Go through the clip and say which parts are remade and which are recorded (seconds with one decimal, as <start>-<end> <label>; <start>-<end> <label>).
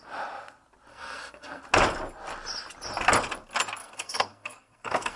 0.0-0.9 recorded; 0.9-1.6 remade; 1.6-3.8 recorded; 3.8-5.2 remade